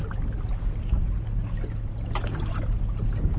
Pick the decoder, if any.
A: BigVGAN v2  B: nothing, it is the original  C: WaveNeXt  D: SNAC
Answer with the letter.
B